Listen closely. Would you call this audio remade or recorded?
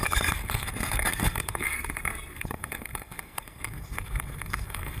remade